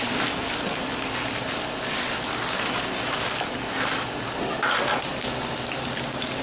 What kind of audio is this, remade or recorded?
recorded